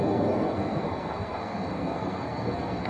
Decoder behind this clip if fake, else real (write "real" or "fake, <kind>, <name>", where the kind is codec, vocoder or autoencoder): fake, codec, SNAC